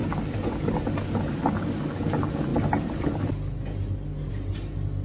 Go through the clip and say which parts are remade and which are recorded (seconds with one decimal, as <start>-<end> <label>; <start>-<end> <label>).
0.0-5.0 recorded